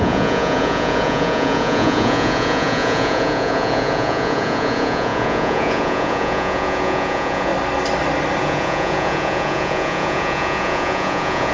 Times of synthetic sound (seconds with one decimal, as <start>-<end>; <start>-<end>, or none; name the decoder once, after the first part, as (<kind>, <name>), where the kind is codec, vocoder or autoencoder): 0.0-7.5 (vocoder, Vocos); 8.4-11.5